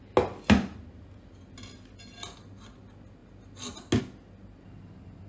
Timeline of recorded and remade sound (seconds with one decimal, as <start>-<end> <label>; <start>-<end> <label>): 0.0-5.3 recorded